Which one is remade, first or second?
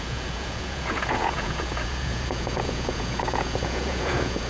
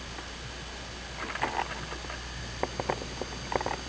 first